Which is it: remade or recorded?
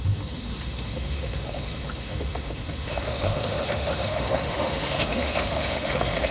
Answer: remade